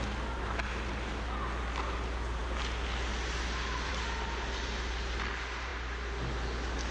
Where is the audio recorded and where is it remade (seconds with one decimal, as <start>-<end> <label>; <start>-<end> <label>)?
0.0-6.9 recorded